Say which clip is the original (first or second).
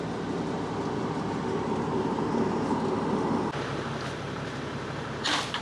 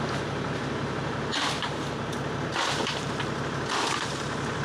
second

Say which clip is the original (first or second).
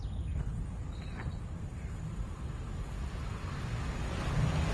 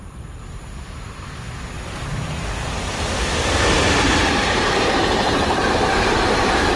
first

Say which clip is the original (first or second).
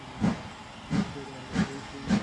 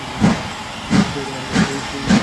first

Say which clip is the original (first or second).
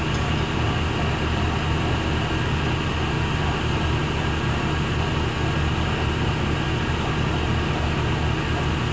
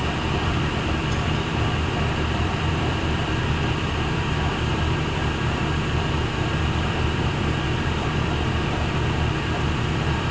first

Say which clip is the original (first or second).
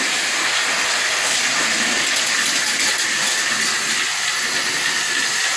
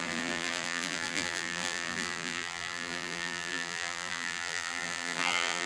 first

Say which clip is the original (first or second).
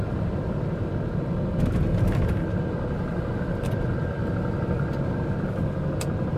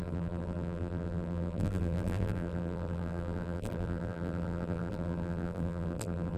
first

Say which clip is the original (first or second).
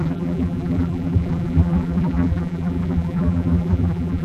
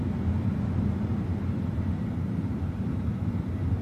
second